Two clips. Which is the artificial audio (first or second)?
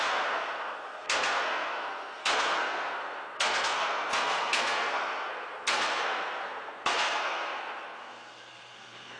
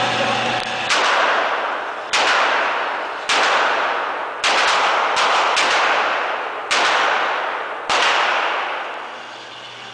first